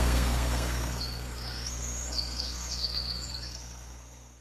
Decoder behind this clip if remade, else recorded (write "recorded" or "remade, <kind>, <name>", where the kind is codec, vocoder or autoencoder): remade, codec, SNAC